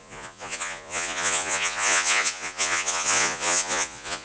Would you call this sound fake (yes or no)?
yes